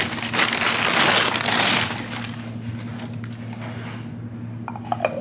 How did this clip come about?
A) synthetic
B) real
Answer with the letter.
B